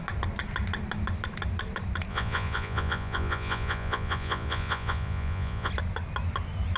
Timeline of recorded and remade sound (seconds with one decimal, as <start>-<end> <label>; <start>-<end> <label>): 0.0-2.1 recorded; 2.1-5.7 remade; 5.7-6.8 recorded